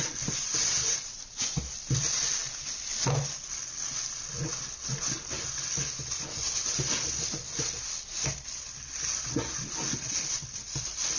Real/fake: real